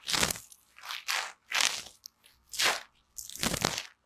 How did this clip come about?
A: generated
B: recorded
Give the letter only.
B